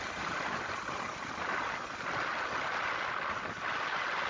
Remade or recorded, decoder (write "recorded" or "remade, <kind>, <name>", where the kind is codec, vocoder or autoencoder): recorded